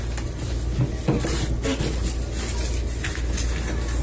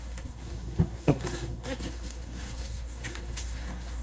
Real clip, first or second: first